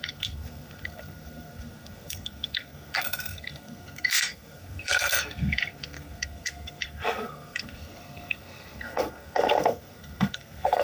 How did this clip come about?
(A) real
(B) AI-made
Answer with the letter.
B